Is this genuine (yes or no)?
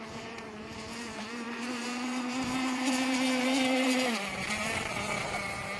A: no